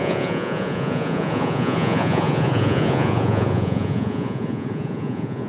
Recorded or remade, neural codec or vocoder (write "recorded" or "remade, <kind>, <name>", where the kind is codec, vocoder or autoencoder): remade, vocoder, Vocos